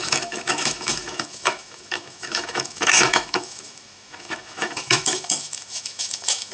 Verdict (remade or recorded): remade